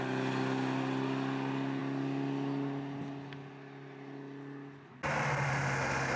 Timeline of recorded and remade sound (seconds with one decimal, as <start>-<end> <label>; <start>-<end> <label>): 0.0-6.2 recorded